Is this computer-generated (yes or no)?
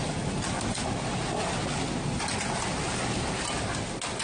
no